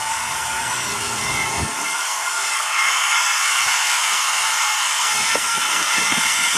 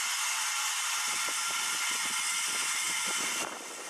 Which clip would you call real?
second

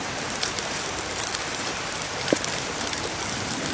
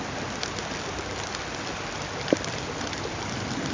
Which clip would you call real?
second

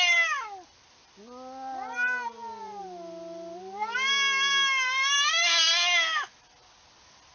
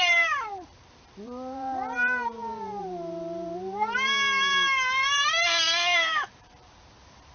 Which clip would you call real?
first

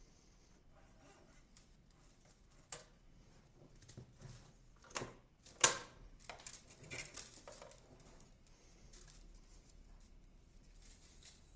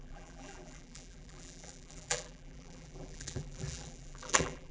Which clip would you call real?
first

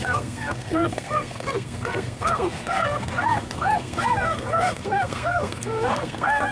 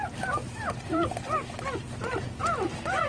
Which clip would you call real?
second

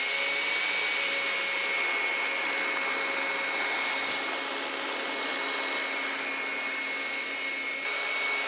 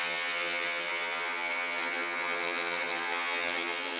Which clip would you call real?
first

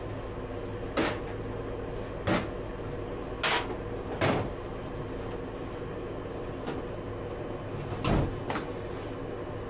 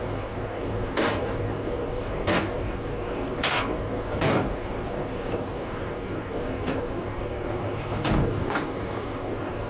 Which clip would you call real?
first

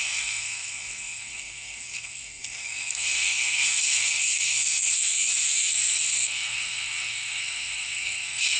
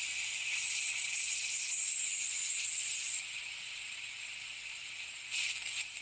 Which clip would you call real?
second